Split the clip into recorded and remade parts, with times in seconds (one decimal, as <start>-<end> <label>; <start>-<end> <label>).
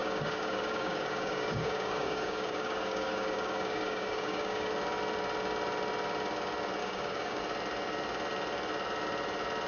0.0-4.7 remade; 4.7-6.8 recorded; 6.8-7.4 remade; 7.4-9.7 recorded